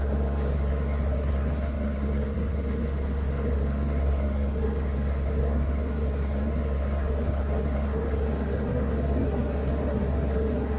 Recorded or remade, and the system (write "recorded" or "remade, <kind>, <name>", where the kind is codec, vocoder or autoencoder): remade, codec, SNAC